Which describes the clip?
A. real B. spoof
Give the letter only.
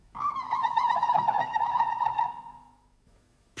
B